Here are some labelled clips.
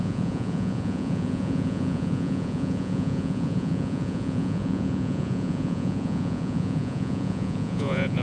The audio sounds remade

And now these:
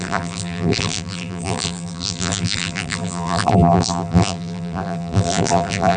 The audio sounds remade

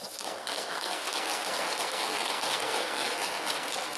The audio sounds remade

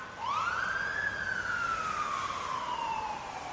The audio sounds recorded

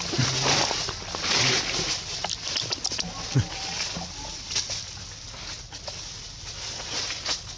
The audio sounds recorded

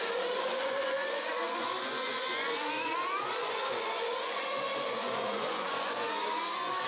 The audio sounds remade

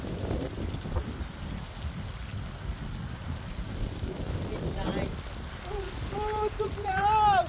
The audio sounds recorded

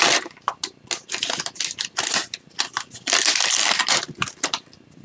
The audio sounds recorded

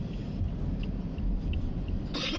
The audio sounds recorded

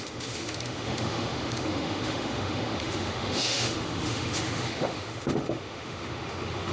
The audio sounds remade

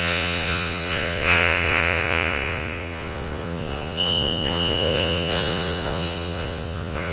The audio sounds remade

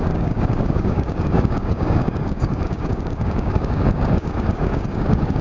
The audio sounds remade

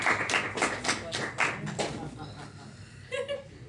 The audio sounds recorded